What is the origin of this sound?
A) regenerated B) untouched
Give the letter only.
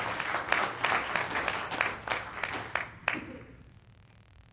B